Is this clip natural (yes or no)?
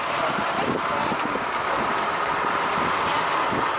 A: yes